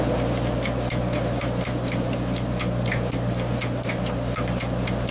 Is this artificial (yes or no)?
no